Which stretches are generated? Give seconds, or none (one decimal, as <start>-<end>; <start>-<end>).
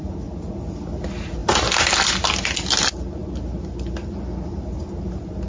none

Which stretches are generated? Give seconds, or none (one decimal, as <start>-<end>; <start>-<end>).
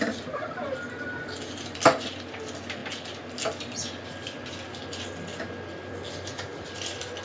none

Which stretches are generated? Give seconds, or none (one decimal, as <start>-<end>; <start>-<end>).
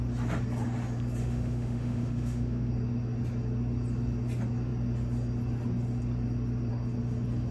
1.2-2.7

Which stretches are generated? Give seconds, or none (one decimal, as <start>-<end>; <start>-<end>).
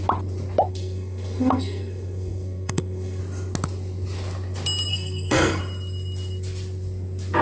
0.7-3.2; 4.9-5.6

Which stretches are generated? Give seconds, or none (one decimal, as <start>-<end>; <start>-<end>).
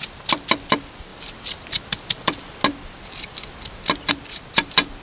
none